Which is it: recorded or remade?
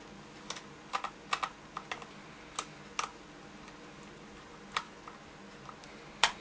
recorded